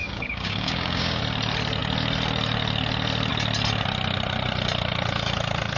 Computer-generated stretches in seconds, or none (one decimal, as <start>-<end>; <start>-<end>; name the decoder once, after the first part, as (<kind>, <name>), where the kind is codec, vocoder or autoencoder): 0.0-1.2 (codec, DAC)